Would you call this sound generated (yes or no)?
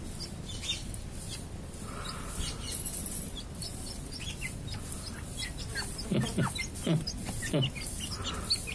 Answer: no